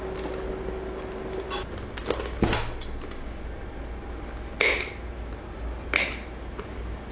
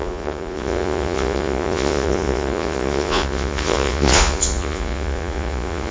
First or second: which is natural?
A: first